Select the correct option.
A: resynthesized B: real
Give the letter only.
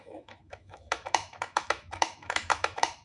A